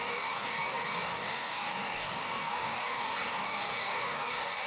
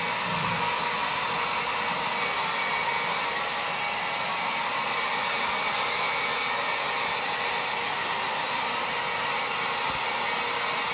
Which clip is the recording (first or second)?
second